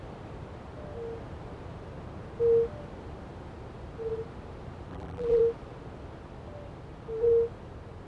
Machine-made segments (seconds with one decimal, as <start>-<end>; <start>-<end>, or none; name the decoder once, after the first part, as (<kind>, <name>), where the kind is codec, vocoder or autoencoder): 4.9-5.4 (vocoder, BigVGAN v2)